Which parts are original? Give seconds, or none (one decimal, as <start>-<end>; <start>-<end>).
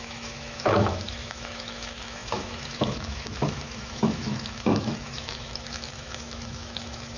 none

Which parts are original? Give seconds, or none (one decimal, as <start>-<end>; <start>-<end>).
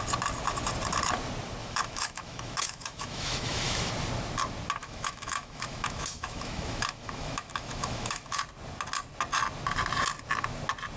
0.0-1.6; 3.9-4.8; 8.4-11.0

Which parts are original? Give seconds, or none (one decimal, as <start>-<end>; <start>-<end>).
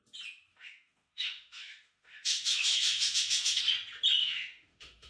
0.0-0.5; 3.6-4.2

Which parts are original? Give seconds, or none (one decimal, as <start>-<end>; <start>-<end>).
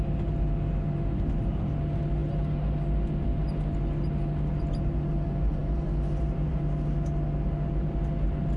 0.0-8.6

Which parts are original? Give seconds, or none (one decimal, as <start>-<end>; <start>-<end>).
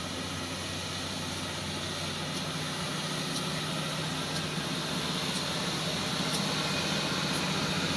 0.0-8.0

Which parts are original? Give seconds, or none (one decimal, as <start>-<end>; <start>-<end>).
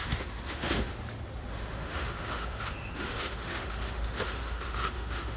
0.9-1.5